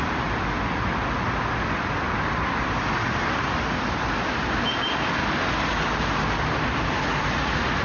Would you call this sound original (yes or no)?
yes